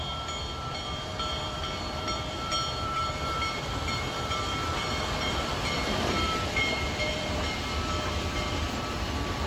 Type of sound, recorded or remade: remade